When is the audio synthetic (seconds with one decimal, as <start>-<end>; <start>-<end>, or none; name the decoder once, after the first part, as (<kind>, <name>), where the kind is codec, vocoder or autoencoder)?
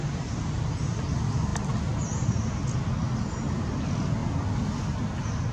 none